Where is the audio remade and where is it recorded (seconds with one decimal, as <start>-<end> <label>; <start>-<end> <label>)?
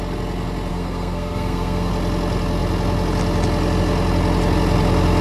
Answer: 0.0-0.7 recorded; 0.7-1.9 remade; 1.9-5.2 recorded